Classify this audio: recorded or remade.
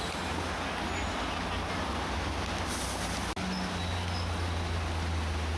recorded